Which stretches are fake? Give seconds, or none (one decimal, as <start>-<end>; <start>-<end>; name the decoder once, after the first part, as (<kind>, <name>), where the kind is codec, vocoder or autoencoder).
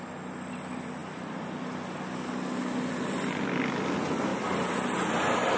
none